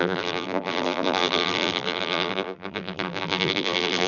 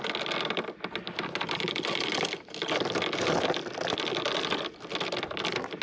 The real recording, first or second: second